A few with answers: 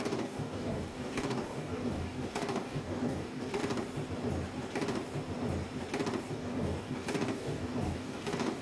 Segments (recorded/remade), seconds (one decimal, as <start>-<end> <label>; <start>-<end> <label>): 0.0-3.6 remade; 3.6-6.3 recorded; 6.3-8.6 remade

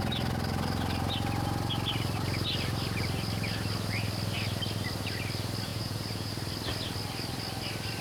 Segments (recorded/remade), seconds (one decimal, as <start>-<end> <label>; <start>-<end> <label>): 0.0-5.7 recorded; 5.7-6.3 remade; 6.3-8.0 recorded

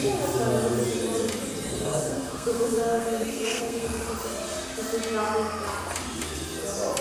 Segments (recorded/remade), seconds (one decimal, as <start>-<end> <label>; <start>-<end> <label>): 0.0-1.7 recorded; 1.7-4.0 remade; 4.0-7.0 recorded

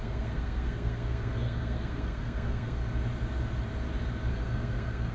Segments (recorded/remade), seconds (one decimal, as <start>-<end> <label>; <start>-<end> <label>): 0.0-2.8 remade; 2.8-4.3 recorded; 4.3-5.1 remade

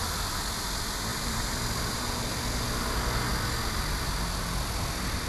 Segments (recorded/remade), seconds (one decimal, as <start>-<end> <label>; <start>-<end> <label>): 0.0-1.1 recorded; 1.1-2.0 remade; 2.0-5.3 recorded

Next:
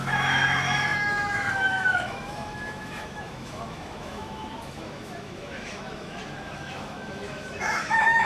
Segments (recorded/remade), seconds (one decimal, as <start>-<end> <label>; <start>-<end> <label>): 0.0-8.2 remade